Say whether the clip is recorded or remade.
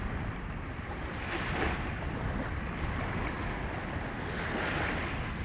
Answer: recorded